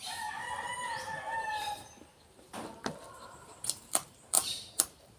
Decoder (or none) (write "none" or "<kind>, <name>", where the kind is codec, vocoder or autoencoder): vocoder, BigVGAN v2